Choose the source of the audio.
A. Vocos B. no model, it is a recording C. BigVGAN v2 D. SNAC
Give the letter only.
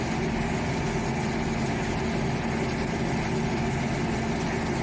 B